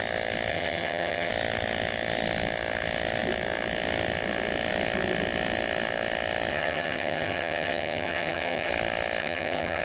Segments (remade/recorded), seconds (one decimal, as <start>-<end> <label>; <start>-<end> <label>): 0.0-0.5 recorded; 0.5-1.3 remade; 1.3-6.5 recorded; 6.5-8.7 remade; 8.7-9.2 recorded; 9.2-9.8 remade